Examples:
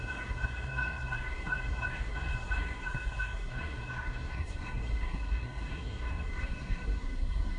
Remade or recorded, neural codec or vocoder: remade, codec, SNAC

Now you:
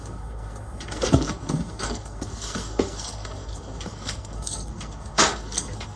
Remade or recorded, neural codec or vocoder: remade, codec, SNAC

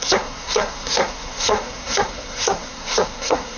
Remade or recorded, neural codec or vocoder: remade, codec, SNAC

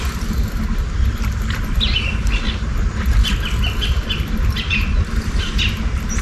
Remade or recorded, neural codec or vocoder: recorded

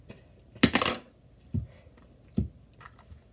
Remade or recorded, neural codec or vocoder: recorded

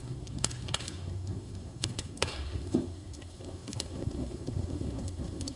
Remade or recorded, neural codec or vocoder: remade, codec, SNAC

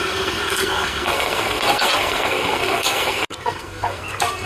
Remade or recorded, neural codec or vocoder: remade, codec, SNAC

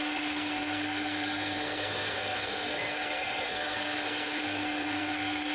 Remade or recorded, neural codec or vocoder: remade, codec, SNAC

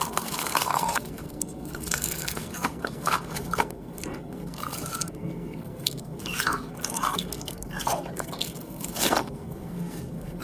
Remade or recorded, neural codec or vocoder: remade, codec, SNAC